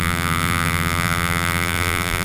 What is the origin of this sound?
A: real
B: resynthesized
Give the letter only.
B